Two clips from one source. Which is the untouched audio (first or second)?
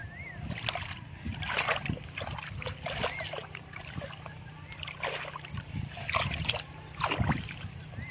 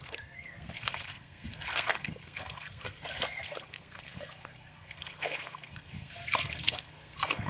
first